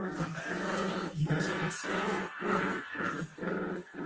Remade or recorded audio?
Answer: remade